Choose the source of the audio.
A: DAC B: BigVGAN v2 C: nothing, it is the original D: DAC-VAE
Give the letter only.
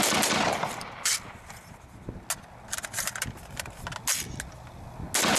C